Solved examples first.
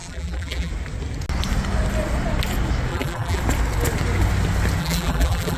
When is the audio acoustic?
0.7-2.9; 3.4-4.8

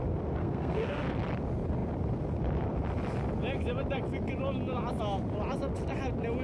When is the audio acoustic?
0.0-0.4; 1.0-6.4

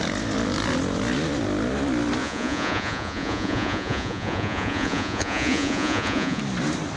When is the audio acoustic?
0.0-2.2; 6.4-7.0

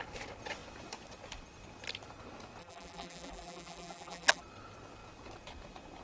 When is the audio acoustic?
0.0-2.6; 4.4-6.0

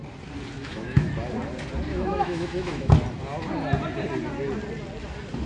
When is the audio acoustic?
0.0-0.6; 1.1-1.9; 2.9-5.5